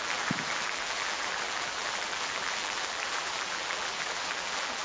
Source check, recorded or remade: remade